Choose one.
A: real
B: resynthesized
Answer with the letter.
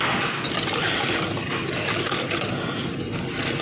A